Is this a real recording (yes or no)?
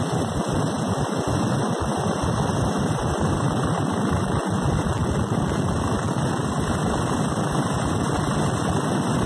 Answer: yes